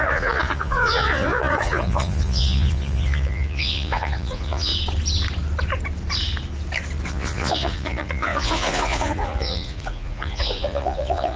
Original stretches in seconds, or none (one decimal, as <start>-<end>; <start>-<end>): 4.7-7.1